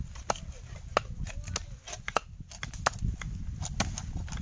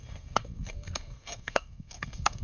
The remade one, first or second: second